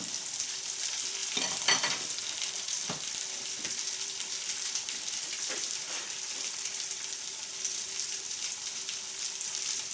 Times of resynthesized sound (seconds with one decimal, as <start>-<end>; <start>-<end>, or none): 0.0-9.9